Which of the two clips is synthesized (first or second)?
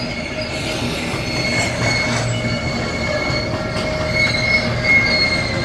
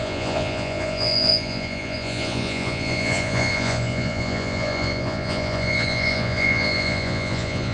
second